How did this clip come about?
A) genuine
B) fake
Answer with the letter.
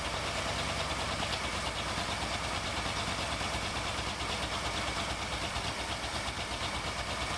A